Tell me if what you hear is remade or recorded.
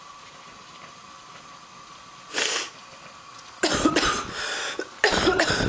recorded